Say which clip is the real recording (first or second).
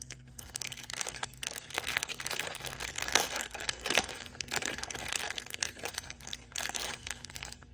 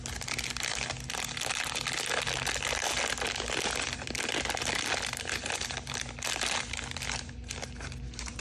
second